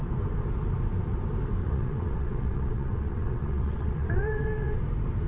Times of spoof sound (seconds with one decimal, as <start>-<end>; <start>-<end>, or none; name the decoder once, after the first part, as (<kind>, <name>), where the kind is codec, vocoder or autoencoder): 1.6-4.8 (vocoder, WaveNeXt)